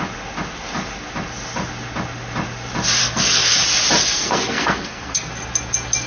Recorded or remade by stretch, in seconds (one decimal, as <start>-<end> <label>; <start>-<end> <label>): 0.0-3.0 recorded; 3.0-3.6 remade; 3.6-4.0 recorded; 4.0-5.3 remade; 5.3-6.1 recorded

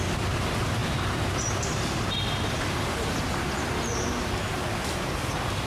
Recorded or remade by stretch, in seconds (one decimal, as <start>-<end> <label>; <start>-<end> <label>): 0.0-5.7 recorded

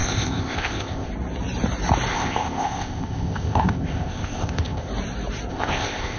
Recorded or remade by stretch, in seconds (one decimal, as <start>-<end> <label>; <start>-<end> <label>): 0.0-1.1 remade; 1.1-2.1 recorded; 2.1-4.9 remade; 4.9-5.5 recorded; 5.5-6.2 remade

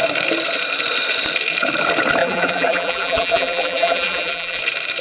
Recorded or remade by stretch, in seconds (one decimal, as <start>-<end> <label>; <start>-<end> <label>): 0.0-2.2 recorded; 2.2-4.6 remade; 4.6-5.0 recorded

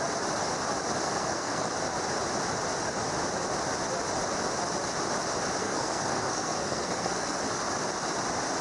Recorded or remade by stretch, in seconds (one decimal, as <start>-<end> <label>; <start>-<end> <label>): 0.0-1.0 recorded; 1.0-1.7 remade; 1.7-5.6 recorded; 5.6-7.4 remade; 7.4-8.6 recorded

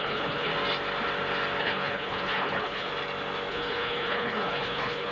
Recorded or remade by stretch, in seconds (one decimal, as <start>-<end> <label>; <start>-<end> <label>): 0.0-0.5 remade; 0.5-1.6 recorded; 1.6-2.9 remade; 2.9-3.5 recorded; 3.5-5.1 remade

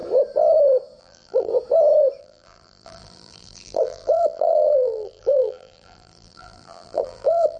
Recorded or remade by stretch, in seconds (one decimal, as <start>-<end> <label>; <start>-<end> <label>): 0.0-1.0 recorded; 1.0-1.5 remade; 1.5-2.2 recorded; 2.2-7.6 remade